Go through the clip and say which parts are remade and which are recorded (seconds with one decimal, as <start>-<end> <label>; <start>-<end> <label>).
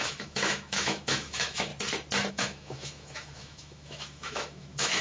0.0-1.7 remade; 1.7-2.3 recorded; 2.3-5.0 remade